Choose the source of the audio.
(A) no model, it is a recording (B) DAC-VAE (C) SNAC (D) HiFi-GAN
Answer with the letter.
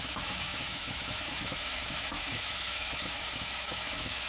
B